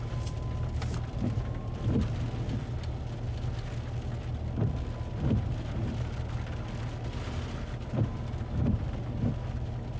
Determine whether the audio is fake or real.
real